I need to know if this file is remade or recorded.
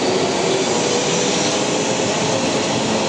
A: recorded